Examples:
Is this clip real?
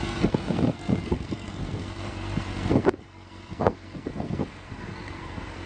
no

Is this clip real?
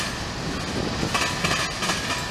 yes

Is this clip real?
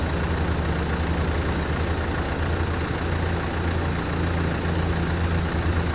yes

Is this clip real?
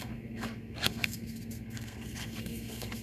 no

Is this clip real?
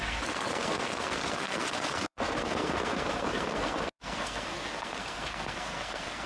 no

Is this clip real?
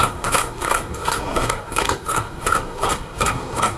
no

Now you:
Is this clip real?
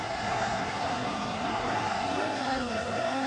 no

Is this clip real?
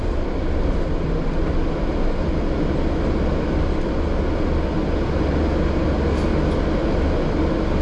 yes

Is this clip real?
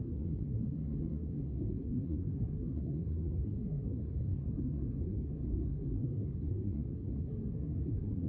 no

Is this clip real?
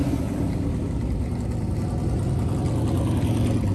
yes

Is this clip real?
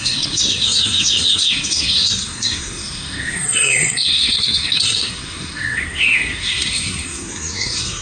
no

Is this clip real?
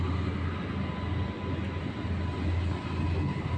yes